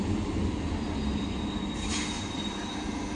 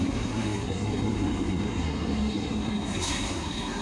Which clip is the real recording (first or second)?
first